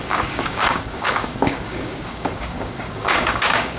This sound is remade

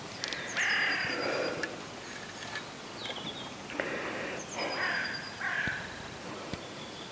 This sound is recorded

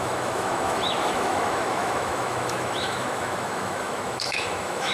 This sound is remade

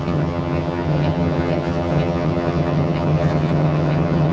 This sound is remade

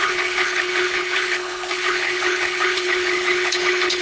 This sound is remade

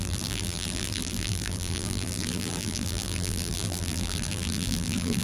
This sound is remade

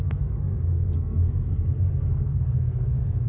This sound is remade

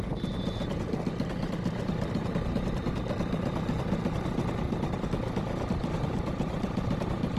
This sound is recorded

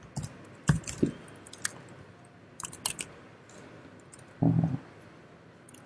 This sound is recorded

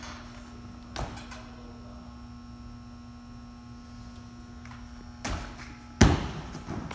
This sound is recorded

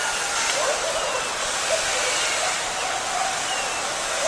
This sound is recorded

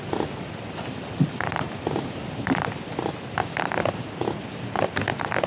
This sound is recorded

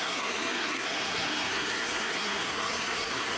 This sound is remade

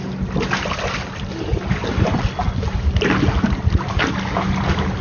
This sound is recorded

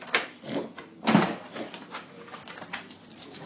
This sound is recorded